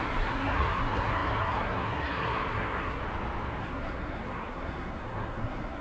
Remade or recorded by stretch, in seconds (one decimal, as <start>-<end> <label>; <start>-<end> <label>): 0.0-3.0 remade; 3.0-3.6 recorded; 3.6-5.8 remade